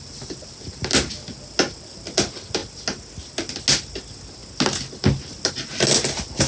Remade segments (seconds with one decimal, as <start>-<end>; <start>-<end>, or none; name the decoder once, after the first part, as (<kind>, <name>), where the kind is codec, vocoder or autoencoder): none